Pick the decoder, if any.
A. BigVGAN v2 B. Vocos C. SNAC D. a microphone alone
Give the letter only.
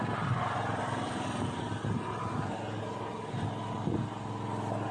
D